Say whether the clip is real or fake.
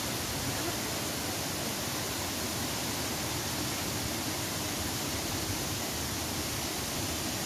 real